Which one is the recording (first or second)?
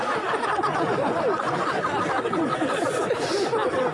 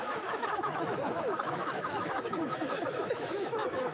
first